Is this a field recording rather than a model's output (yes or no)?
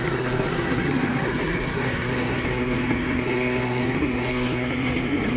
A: no